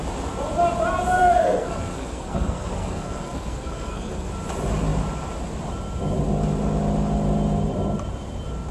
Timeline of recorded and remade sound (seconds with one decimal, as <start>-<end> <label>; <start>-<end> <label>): 0.0-1.2 recorded; 1.2-4.3 remade; 4.3-8.7 recorded